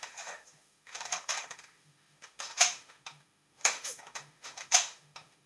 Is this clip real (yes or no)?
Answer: no